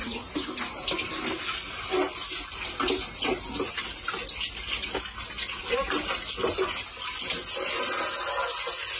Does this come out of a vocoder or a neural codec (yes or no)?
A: no